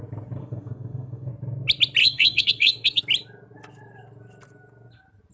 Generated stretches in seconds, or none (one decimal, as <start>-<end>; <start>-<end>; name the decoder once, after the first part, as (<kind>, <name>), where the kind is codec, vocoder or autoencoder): 0.4-1.3 (codec, SNAC); 2.0-3.0